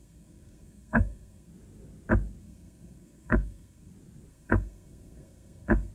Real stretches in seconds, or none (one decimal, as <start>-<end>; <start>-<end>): 1.5-2.4; 3.9-4.3